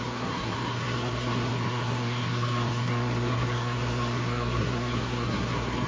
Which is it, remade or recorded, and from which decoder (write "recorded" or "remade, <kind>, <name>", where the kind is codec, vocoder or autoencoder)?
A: remade, codec, SNAC